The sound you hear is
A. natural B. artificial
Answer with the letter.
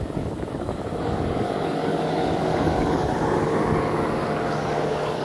B